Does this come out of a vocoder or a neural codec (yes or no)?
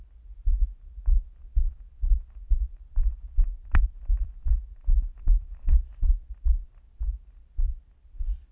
no